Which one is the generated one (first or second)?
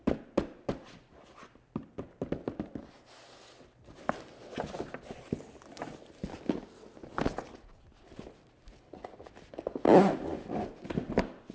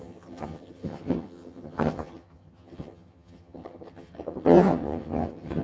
second